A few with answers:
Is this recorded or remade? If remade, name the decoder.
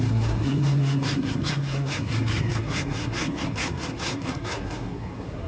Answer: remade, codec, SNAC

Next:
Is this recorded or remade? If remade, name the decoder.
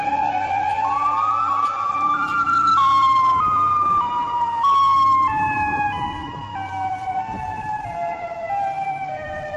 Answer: remade, vocoder, BigVGAN v2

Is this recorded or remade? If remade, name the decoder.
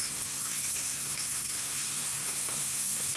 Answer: remade, codec, SNAC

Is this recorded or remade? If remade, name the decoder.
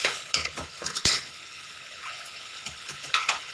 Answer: remade, codec, HILCodec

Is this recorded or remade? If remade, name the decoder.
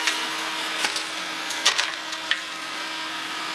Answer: remade, codec, SNAC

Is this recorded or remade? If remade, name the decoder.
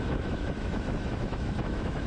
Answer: remade, autoencoder, DAC-VAE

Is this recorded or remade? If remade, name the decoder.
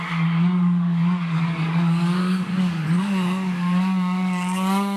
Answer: remade, codec, DAC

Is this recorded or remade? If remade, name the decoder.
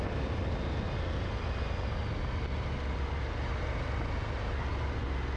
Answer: recorded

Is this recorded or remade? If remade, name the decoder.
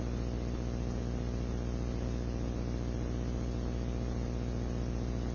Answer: recorded